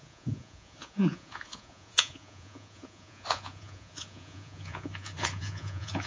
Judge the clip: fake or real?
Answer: fake